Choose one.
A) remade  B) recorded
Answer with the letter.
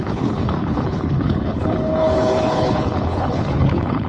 A